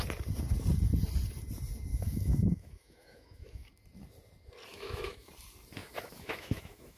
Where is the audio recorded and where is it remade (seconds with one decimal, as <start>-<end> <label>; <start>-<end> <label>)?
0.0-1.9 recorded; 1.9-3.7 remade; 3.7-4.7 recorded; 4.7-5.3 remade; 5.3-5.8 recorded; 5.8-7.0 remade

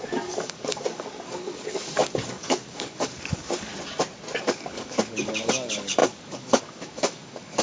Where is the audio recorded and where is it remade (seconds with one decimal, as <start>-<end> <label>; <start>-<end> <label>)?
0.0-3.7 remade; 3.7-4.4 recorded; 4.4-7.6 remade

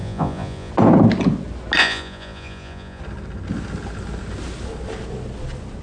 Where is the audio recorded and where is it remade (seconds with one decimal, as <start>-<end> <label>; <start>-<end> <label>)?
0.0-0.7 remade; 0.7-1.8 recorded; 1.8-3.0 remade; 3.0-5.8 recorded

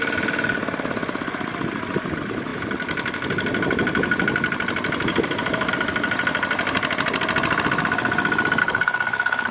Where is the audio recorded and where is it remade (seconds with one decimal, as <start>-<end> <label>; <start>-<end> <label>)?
0.0-8.6 recorded; 8.6-9.5 remade

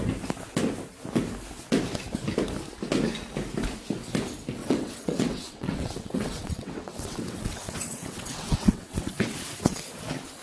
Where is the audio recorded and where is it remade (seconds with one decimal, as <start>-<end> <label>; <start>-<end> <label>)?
0.0-4.6 recorded; 4.6-9.9 remade; 9.9-10.4 recorded

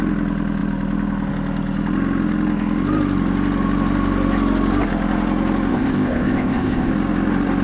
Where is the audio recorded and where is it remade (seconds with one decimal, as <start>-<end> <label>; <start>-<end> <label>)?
0.0-5.7 recorded; 5.7-6.9 remade; 6.9-7.6 recorded

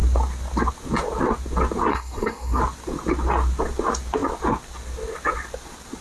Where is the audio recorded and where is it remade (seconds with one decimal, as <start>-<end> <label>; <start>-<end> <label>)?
0.0-1.9 recorded; 1.9-2.6 remade; 2.6-6.0 recorded